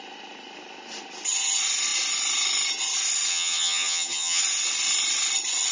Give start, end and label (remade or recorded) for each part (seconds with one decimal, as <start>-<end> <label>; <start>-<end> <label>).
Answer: 0.0-3.3 recorded; 3.3-4.4 remade; 4.4-5.7 recorded